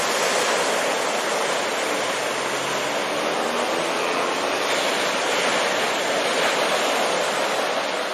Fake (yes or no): no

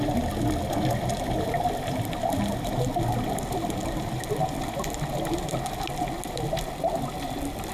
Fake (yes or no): no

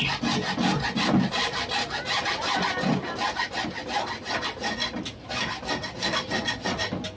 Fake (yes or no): no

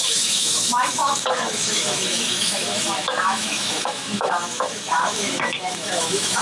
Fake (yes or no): yes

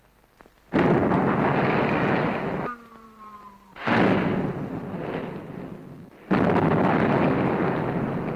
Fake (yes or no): no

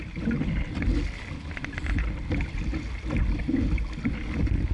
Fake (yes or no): no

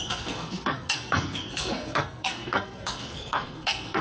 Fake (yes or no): yes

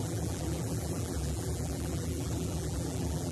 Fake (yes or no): yes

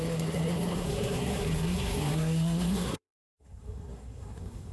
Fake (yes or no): yes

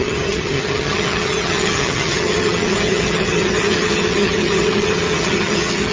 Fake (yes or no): yes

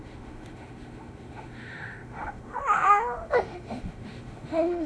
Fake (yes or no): yes